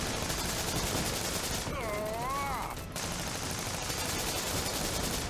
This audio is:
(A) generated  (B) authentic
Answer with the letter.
B